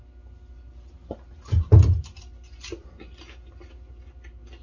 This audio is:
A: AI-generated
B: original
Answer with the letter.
B